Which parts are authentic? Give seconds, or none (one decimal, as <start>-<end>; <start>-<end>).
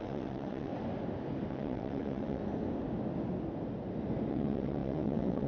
0.7-1.5; 2.4-4.3